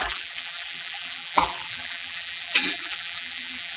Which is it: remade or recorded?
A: remade